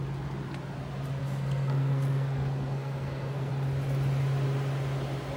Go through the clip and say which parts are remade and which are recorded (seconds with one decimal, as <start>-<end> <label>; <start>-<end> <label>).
0.0-1.2 recorded; 1.2-3.5 remade; 3.5-5.4 recorded